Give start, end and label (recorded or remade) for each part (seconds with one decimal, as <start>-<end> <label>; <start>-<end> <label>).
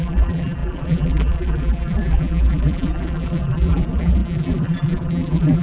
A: 0.0-5.6 remade